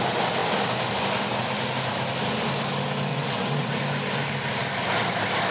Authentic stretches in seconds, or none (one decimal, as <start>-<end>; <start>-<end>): 0.0-3.1; 3.8-5.5

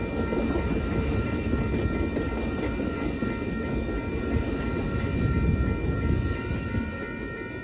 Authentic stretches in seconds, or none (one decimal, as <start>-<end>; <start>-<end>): 0.0-7.6

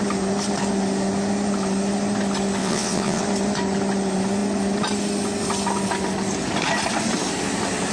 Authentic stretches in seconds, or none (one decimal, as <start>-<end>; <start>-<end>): 0.0-2.6; 3.2-7.9

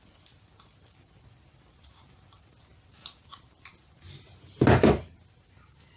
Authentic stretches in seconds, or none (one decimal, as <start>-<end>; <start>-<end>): 0.0-6.0